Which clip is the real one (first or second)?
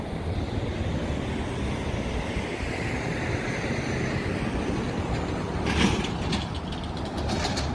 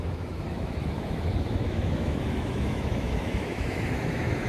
first